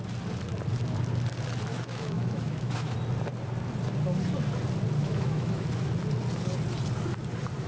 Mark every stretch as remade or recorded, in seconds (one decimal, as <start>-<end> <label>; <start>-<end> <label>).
0.0-1.7 recorded; 1.7-2.9 remade; 2.9-5.0 recorded; 5.0-5.7 remade; 5.7-7.7 recorded